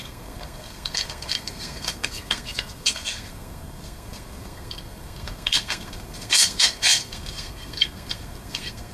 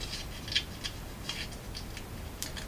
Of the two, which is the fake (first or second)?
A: first